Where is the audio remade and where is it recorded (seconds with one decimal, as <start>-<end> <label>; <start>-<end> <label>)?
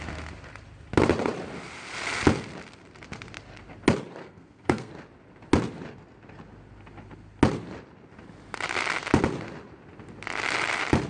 0.0-4.2 recorded; 4.2-4.9 remade; 4.9-11.1 recorded